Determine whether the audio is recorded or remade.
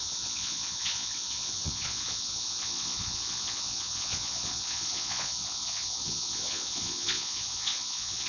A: remade